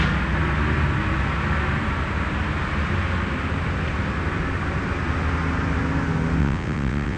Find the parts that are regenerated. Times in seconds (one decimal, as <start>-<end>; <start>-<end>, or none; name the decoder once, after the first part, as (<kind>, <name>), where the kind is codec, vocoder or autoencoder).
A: 6.4-7.2 (vocoder, WaveNeXt)

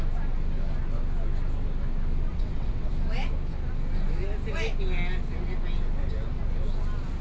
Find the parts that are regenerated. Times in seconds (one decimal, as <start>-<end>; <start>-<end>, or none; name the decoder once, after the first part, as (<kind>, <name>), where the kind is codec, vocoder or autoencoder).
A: 2.3-2.9 (vocoder, WaveNeXt)

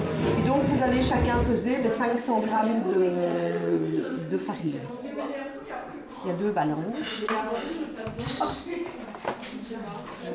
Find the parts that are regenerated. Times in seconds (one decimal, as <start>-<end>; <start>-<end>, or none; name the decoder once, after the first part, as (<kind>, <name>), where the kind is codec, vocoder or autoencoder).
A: 2.1-5.2 (vocoder, WaveNeXt)

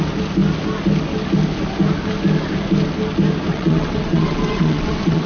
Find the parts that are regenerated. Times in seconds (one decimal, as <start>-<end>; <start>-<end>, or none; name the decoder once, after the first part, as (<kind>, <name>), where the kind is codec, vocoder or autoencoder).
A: 3.5-5.3 (vocoder, WaveNeXt)

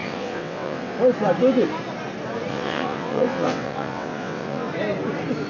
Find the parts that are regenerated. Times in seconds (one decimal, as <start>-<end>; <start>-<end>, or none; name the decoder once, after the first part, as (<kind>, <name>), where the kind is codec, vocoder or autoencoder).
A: 0.0-1.0 (vocoder, WaveNeXt); 2.5-4.7

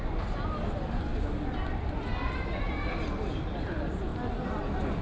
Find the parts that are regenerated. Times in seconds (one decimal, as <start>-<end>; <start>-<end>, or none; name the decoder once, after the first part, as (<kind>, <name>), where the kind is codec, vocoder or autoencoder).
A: none